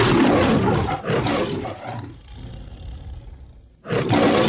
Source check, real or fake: real